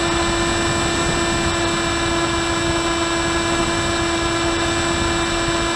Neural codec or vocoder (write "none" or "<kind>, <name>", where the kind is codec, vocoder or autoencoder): none